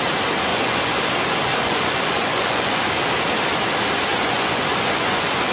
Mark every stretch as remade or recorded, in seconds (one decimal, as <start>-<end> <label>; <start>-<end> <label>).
0.0-0.5 recorded; 0.5-1.0 remade; 1.0-1.5 recorded; 1.5-2.9 remade; 2.9-4.1 recorded; 4.1-5.5 remade